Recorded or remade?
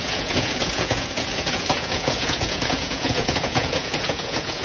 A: remade